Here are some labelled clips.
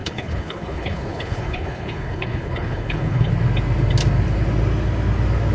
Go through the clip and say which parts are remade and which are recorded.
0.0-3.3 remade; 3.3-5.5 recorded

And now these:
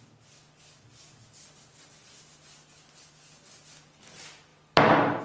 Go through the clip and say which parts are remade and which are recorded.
0.0-5.2 recorded